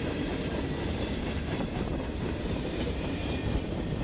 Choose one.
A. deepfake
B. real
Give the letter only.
A